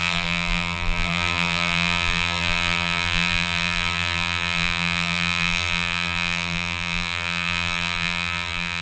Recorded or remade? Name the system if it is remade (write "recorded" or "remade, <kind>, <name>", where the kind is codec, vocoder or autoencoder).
remade, vocoder, BigVGAN v2